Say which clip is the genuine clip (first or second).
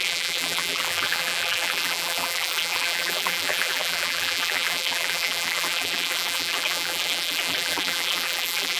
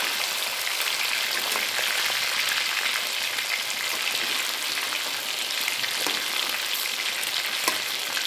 second